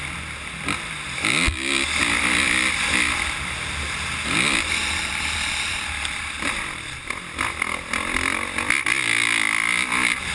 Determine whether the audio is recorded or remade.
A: recorded